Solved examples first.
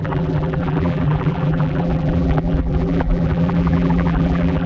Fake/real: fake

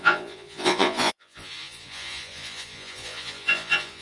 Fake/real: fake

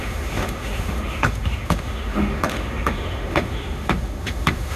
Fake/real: fake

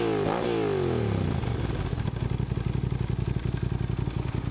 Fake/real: real